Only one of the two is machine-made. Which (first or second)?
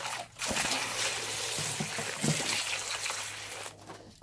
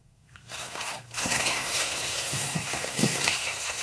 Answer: second